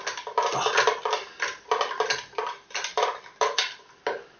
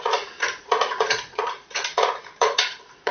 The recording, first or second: first